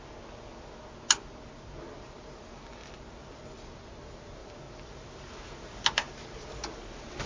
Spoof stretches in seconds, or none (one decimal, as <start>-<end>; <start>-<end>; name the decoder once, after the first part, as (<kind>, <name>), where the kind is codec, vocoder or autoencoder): none